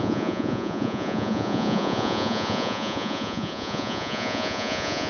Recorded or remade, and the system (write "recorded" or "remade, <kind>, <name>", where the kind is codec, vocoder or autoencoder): remade, vocoder, Vocos